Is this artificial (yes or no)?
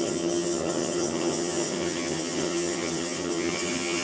yes